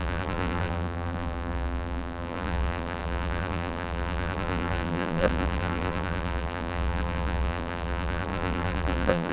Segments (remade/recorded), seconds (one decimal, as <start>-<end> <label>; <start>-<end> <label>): 0.0-9.3 remade